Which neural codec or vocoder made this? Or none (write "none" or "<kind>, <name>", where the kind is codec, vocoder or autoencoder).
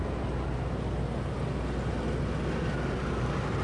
none